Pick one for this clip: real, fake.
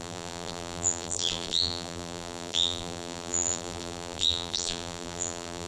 fake